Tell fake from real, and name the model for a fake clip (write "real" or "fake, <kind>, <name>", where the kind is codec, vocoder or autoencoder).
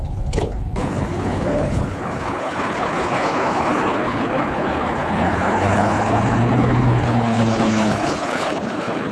fake, codec, HILCodec